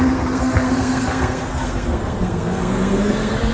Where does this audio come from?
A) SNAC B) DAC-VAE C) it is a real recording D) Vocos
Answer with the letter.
A